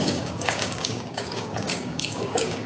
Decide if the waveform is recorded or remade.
remade